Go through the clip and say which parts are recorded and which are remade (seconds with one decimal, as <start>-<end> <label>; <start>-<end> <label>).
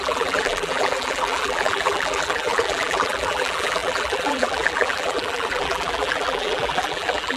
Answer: 0.0-7.4 remade